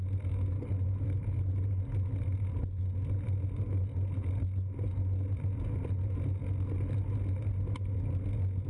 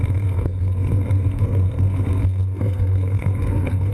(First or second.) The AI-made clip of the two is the second